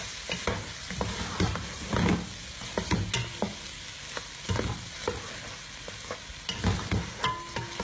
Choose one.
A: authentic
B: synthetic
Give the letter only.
A